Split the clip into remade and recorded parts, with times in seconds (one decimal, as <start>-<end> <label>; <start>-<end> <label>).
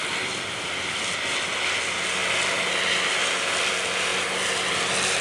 0.0-5.2 recorded